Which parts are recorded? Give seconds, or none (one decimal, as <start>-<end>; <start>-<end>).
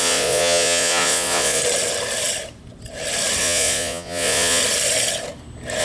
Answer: 1.6-3.4; 4.6-5.8